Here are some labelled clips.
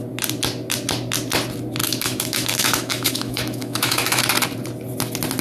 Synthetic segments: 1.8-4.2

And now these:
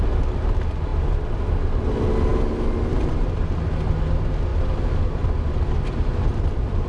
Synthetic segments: none

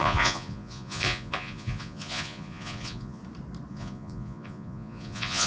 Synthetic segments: 0.0-3.2; 3.7-5.5

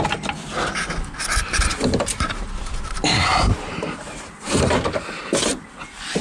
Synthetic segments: 2.1-4.7

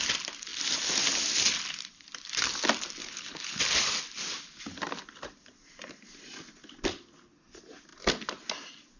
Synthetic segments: 3.0-3.6

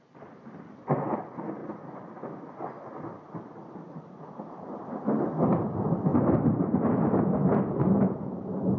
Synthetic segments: none